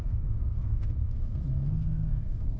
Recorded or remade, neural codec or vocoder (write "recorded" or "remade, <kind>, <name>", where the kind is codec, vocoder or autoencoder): remade, codec, SNAC